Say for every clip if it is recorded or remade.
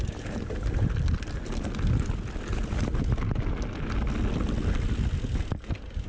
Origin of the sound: recorded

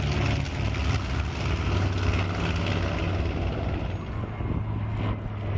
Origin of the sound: recorded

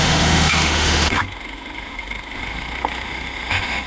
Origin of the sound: remade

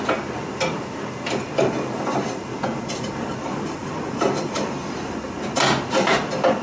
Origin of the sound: recorded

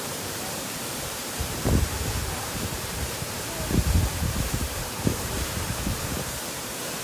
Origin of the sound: remade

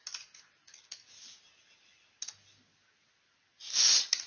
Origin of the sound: recorded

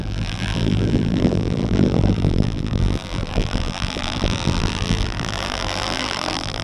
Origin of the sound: remade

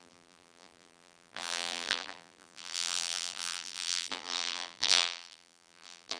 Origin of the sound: remade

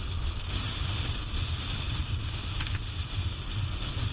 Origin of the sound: recorded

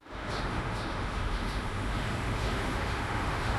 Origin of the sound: remade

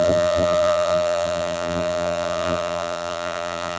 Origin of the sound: remade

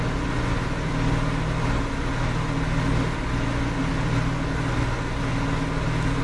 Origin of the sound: recorded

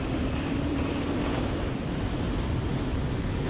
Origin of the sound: remade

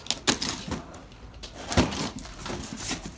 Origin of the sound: recorded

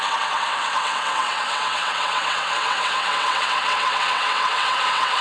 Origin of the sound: remade